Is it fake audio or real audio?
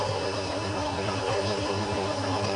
fake